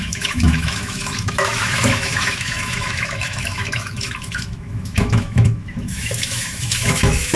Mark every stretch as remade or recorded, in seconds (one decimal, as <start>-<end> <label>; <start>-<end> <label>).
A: 0.0-7.4 remade